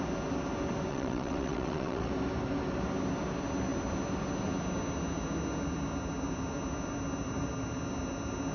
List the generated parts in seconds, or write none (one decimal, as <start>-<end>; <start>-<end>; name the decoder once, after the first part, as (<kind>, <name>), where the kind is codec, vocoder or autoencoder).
0.9-2.1 (vocoder, WaveNeXt)